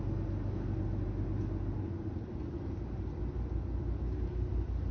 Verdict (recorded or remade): recorded